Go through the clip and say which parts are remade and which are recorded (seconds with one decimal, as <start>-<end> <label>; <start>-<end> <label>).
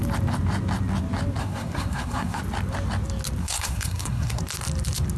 0.0-1.4 recorded; 1.4-2.4 remade; 2.4-3.4 recorded; 3.4-4.4 remade; 4.4-5.2 recorded